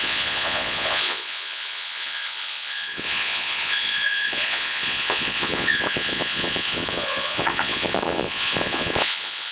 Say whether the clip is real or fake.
fake